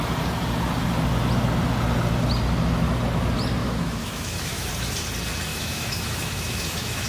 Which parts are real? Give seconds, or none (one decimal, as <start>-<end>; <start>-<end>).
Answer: 0.0-3.6; 4.7-5.5

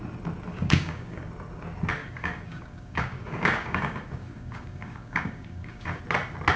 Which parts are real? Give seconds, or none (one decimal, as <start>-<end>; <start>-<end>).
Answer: 0.0-0.5; 1.3-2.0; 6.0-6.6

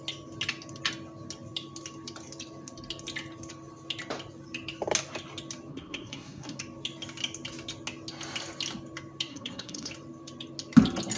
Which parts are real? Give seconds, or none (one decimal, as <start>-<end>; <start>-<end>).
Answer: 0.0-5.7; 6.6-9.3; 9.9-11.2

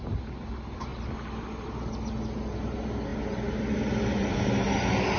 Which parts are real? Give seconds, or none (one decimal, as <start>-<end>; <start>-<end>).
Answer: 0.0-5.2